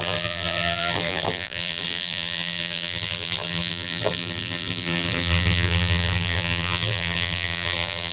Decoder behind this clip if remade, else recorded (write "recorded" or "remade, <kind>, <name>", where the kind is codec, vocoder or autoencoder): remade, vocoder, BigVGAN v2